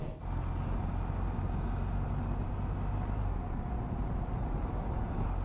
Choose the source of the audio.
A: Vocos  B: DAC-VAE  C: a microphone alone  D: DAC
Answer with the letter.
C